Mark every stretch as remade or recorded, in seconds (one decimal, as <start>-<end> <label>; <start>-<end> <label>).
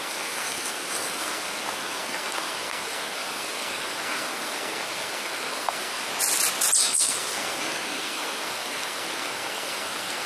0.0-6.1 remade; 6.1-6.8 recorded; 6.8-10.3 remade